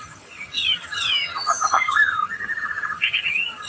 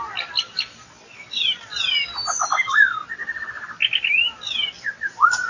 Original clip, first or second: second